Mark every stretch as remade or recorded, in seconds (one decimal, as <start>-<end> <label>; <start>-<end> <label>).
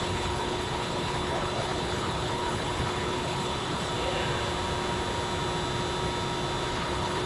0.0-3.9 remade; 3.9-6.7 recorded; 6.7-7.3 remade